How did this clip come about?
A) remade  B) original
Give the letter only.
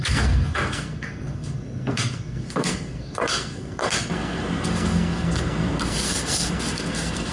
A